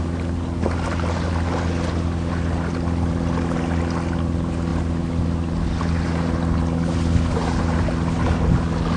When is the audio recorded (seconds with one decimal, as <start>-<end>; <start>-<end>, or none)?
0.0-9.0